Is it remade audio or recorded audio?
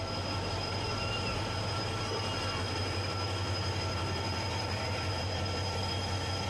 recorded